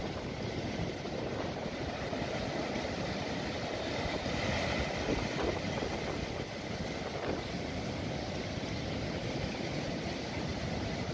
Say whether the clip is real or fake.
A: real